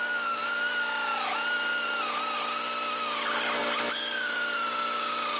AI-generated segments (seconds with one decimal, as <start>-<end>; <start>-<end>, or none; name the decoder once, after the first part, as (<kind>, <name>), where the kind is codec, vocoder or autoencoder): none